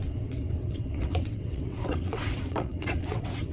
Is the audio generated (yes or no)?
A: yes